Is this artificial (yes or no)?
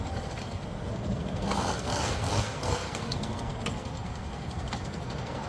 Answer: yes